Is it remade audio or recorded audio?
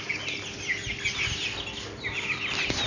recorded